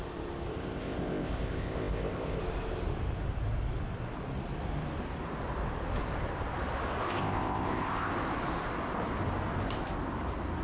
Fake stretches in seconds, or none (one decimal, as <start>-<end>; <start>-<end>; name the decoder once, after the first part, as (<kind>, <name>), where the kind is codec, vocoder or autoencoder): 0.5-2.4 (codec, ZipCodec); 7.0-8.1